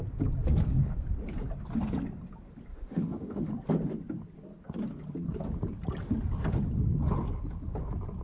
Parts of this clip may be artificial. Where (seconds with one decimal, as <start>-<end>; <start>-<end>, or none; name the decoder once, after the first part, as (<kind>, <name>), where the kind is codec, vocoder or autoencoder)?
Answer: 2.7-3.5 (autoencoder, DAC-VAE)